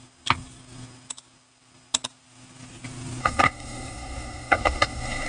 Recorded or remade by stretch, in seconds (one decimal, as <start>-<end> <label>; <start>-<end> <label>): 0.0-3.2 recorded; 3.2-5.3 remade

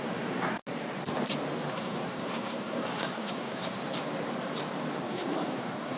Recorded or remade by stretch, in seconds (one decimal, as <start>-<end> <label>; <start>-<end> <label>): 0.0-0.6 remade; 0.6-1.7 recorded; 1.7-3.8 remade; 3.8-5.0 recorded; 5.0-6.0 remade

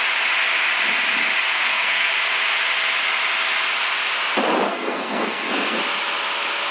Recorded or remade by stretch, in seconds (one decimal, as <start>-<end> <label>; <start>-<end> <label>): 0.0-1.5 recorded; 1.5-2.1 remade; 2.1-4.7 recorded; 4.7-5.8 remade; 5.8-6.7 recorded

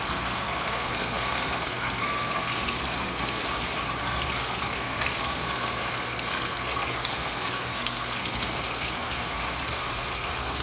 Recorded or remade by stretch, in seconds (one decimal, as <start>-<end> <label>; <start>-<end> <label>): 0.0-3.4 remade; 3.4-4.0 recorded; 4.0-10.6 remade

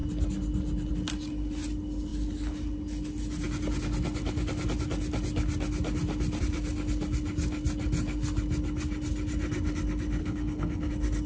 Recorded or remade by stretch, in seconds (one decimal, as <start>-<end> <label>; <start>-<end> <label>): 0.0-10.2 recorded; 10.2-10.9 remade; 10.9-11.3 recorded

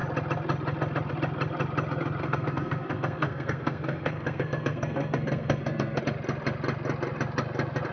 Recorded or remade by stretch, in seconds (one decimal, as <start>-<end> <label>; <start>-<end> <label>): 0.0-2.2 recorded; 2.2-6.0 remade; 6.0-7.9 recorded

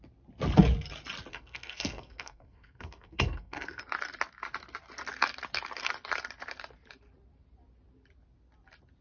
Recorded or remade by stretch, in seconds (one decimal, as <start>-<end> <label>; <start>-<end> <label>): 0.0-1.3 recorded; 1.3-3.8 remade; 3.8-9.0 recorded

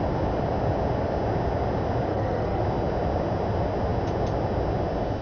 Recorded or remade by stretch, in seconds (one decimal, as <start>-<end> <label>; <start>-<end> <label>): 0.0-2.1 recorded; 2.1-2.6 remade; 2.6-5.2 recorded